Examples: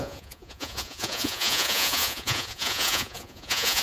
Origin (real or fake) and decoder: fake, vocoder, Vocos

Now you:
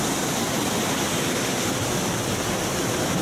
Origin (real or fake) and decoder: real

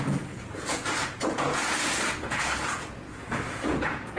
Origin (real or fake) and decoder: fake, vocoder, Vocos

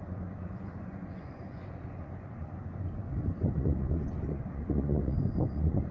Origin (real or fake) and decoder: fake, vocoder, Vocos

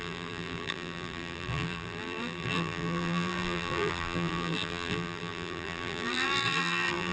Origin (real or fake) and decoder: fake, vocoder, BigVGAN v2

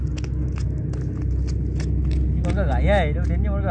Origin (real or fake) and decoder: real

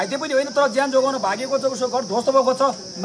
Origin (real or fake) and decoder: real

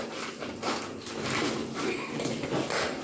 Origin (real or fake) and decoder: real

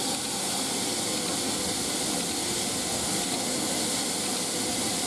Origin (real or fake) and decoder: real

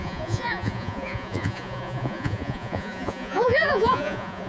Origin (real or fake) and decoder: fake, vocoder, Vocos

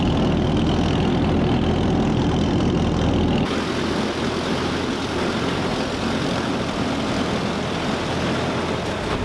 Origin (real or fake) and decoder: real